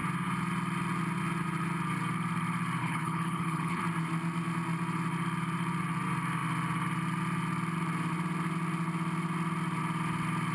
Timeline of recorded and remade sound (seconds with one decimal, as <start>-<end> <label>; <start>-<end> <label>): 0.0-2.8 recorded; 2.8-3.8 remade; 3.8-10.5 recorded